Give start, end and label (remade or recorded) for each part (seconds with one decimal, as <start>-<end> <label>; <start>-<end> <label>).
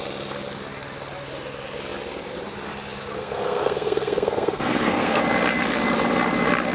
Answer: 0.0-3.2 recorded; 3.2-5.2 remade; 5.2-6.7 recorded